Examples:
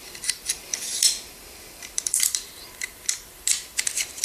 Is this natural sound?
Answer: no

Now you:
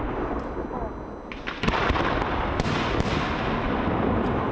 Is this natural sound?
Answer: yes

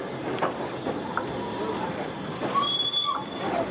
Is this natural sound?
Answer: yes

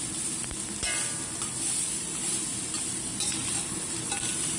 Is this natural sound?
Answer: no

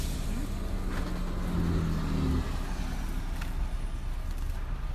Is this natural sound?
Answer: yes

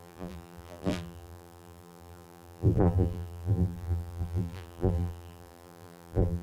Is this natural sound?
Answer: no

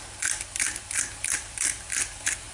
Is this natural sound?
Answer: yes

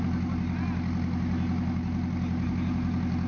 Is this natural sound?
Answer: yes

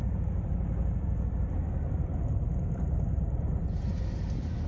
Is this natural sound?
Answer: no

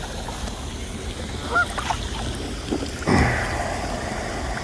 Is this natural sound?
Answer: yes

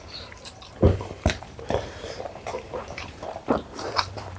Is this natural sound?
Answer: no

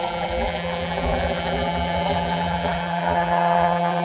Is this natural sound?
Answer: no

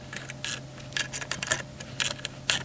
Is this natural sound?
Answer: yes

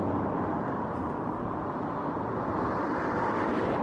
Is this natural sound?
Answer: no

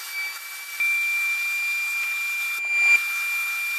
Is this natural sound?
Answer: yes